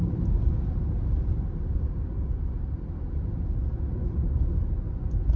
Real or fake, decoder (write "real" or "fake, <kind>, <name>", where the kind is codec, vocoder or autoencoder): real